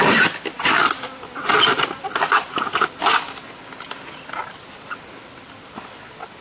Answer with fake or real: real